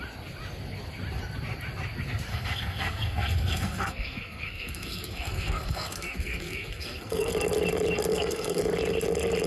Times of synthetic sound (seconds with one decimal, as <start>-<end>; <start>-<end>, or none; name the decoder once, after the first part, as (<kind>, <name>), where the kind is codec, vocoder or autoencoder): 2.3-7.3 (codec, SNAC); 8.1-8.6